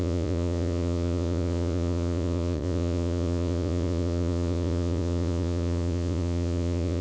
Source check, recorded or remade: remade